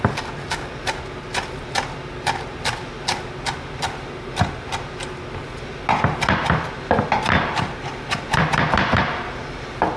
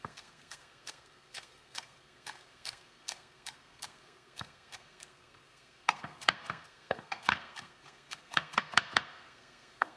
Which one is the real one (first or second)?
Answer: first